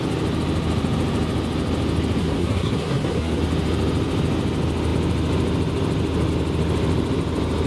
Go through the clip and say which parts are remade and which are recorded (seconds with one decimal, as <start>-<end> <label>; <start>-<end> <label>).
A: 0.0-2.2 recorded; 2.2-3.4 remade; 3.4-7.7 recorded